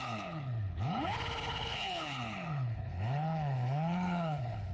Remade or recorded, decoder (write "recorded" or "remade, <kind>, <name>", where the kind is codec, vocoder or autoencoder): remade, codec, HILCodec